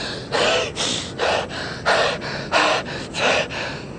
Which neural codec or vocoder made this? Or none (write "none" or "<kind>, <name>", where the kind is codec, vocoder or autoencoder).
none